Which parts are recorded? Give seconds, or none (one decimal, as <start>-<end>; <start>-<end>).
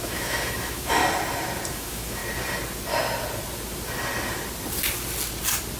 1.0-1.7; 2.2-5.8